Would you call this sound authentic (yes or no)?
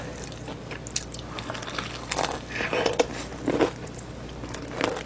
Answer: yes